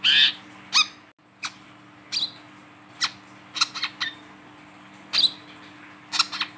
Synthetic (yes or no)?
no